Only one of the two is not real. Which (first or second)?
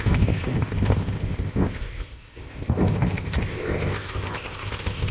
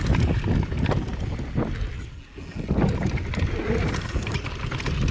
first